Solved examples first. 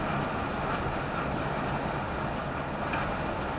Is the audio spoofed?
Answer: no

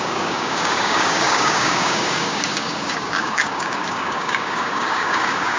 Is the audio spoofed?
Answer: yes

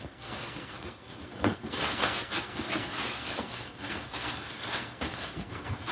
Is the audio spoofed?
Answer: yes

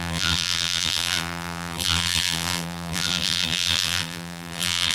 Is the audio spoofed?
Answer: yes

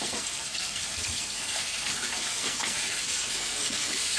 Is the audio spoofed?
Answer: yes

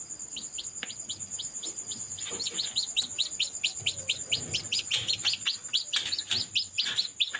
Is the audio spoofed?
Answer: no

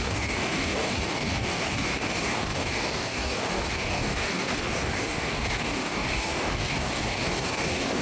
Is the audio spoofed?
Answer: yes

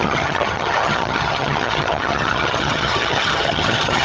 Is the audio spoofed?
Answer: yes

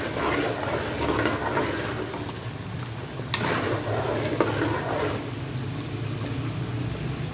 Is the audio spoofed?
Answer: no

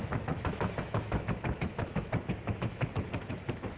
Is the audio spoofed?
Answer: yes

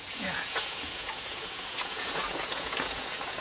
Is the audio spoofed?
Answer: yes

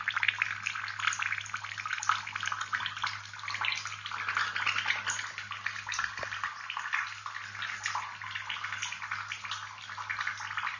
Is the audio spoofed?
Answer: no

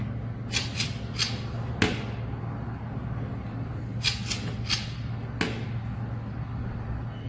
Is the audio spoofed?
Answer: no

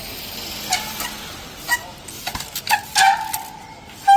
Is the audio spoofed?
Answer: no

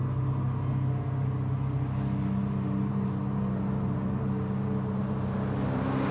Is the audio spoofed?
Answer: no